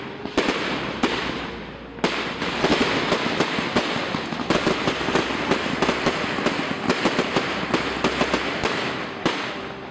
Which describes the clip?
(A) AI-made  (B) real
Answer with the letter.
B